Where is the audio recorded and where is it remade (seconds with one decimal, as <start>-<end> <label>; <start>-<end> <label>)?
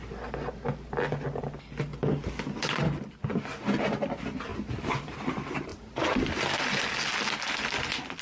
0.0-1.9 recorded; 1.9-3.4 remade; 3.4-4.5 recorded; 4.5-5.2 remade; 5.2-5.7 recorded; 5.7-6.6 remade; 6.6-8.2 recorded